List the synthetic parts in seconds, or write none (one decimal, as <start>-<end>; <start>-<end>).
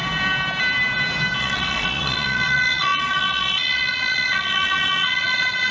1.4-5.7